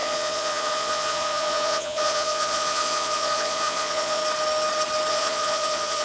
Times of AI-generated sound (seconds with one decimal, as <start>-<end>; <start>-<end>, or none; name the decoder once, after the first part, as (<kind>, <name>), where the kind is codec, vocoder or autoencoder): 0.0-4.2 (vocoder, Vocos); 5.1-6.0